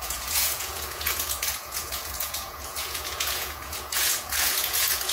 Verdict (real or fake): fake